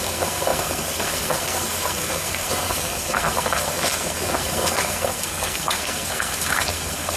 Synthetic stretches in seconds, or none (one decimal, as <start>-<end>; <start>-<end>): 0.0-7.2